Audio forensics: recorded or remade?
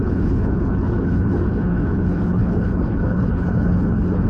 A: remade